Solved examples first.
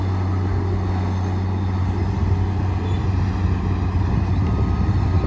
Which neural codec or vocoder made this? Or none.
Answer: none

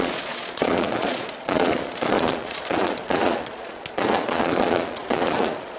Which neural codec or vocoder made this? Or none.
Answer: vocoder, Vocos